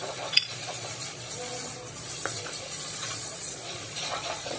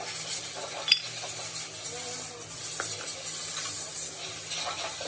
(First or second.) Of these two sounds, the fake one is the first